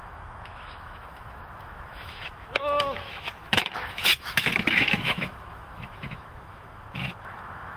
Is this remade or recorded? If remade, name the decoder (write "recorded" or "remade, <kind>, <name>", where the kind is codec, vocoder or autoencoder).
remade, autoencoder, DAC-VAE